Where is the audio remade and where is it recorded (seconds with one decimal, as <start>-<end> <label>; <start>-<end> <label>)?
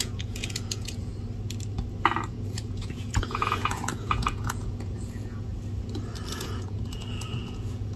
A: 0.0-1.1 remade; 1.1-2.3 recorded; 2.3-5.5 remade; 5.5-6.3 recorded; 6.3-8.0 remade